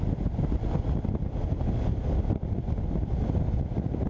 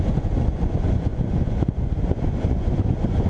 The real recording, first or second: first